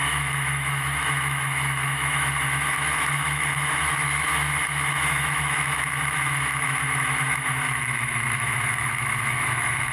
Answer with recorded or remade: remade